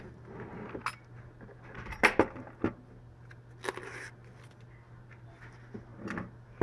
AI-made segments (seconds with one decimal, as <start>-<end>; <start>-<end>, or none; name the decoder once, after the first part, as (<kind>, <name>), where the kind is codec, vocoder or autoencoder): none